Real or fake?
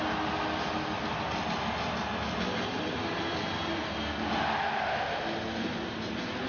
real